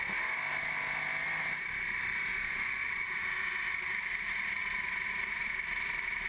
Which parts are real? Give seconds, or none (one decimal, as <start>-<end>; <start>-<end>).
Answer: 0.0-2.3; 3.0-6.3